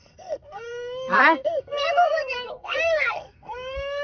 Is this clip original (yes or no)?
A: no